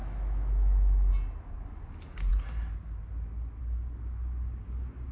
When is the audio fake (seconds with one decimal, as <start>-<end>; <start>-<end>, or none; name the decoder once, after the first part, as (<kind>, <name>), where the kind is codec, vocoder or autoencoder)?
0.0-1.1 (autoencoder, DAC-VAE)